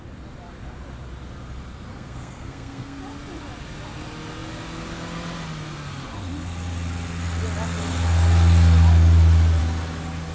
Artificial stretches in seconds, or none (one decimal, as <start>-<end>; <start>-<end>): 1.9-3.0